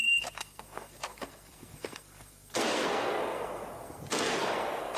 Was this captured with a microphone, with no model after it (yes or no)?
no